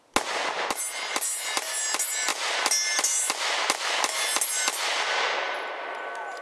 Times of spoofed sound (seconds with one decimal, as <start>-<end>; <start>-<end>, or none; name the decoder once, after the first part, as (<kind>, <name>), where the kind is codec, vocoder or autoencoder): none